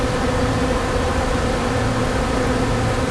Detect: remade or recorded recorded